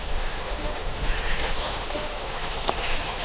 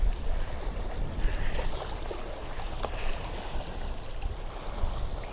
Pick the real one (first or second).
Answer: second